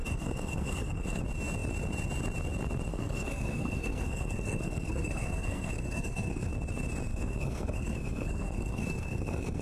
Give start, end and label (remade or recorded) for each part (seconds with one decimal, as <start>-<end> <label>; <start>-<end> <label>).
0.0-1.2 remade; 1.2-2.9 recorded; 2.9-6.5 remade; 6.5-7.1 recorded; 7.1-9.6 remade